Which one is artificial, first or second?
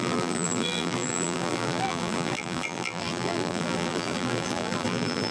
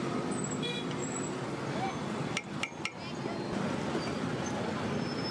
first